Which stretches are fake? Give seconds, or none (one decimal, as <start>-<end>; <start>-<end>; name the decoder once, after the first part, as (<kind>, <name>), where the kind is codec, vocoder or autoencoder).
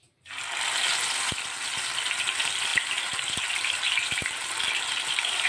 2.7-5.5 (vocoder, BigVGAN v2)